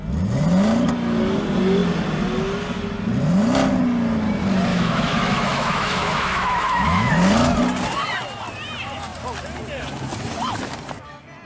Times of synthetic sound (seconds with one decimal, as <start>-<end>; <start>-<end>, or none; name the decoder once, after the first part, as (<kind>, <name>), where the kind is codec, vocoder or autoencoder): 4.7-7.1 (autoencoder, DAC-VAE)

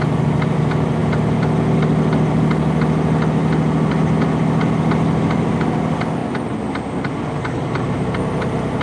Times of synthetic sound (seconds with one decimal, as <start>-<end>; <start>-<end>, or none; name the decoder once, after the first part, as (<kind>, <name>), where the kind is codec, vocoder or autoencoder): none